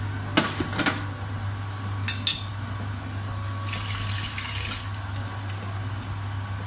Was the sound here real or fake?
real